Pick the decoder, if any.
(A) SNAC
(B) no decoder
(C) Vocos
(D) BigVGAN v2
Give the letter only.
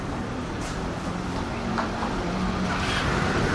D